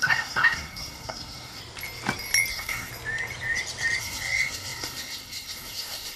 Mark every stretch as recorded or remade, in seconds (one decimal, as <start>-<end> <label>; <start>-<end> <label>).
0.0-1.6 remade; 1.6-2.5 recorded; 2.5-2.9 remade; 2.9-4.0 recorded; 4.0-6.2 remade